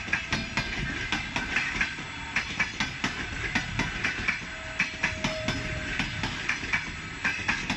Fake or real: real